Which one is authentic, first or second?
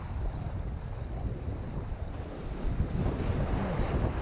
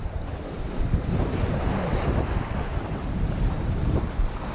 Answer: first